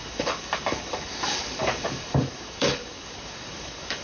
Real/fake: fake